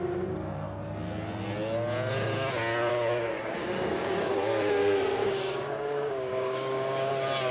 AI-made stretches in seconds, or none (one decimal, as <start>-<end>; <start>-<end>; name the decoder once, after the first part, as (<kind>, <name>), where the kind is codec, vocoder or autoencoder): 2.9-4.3 (codec, DAC); 5.2-7.1